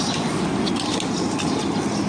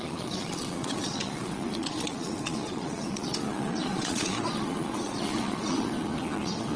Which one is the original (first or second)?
first